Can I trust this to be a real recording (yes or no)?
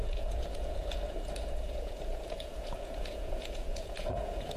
no